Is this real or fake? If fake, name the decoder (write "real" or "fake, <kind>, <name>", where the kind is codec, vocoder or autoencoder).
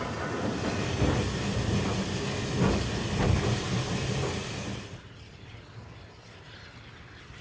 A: real